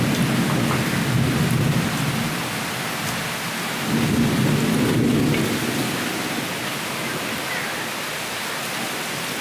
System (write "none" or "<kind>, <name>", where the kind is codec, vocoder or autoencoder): none